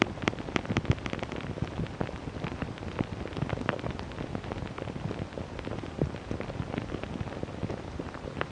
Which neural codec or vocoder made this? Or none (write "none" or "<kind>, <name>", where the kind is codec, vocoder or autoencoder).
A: vocoder, BigVGAN v2